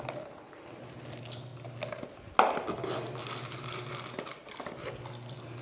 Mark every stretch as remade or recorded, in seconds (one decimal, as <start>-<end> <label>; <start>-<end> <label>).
0.0-5.6 recorded